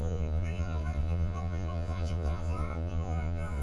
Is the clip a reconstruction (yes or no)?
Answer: yes